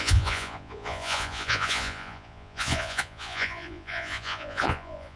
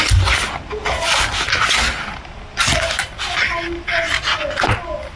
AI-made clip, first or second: first